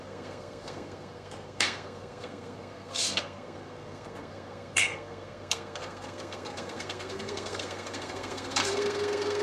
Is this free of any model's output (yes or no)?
no